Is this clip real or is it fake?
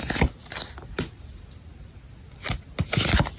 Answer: real